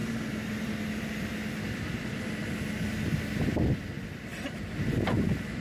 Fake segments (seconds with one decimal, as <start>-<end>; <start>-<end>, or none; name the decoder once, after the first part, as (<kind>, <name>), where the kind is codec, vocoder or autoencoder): 4.3-5.6 (vocoder, BigVGAN v2)